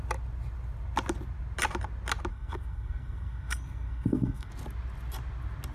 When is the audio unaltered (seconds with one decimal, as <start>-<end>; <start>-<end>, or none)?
0.0-2.3; 4.5-5.7